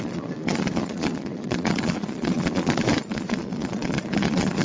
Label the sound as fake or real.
fake